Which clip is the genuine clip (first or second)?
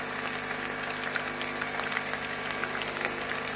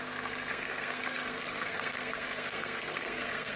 first